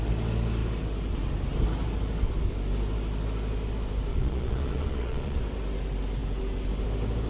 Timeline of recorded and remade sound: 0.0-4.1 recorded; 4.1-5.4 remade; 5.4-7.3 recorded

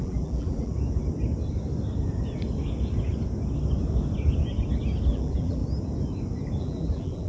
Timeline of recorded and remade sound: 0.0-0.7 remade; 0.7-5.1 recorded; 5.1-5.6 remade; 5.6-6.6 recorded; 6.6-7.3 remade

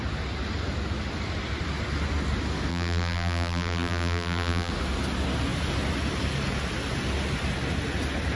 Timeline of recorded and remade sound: 0.0-2.7 recorded; 2.7-4.7 remade; 4.7-8.4 recorded

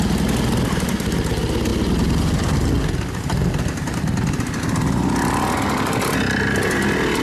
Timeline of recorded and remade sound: 0.0-7.2 recorded